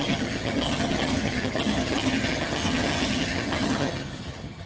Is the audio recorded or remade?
remade